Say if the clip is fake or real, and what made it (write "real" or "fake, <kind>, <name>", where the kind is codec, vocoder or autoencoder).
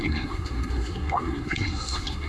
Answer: fake, codec, SNAC